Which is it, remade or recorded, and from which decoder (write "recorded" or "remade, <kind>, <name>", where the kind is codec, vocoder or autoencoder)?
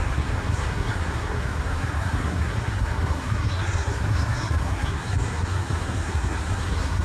remade, codec, SNAC